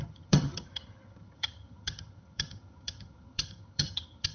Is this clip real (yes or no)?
no